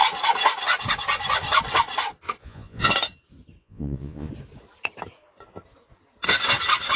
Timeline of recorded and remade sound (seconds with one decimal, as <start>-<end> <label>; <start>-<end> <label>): 0.0-2.4 recorded; 2.4-2.9 remade; 2.9-3.6 recorded; 3.6-4.3 remade; 4.3-7.0 recorded